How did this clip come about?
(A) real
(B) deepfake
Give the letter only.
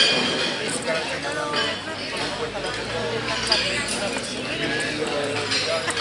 A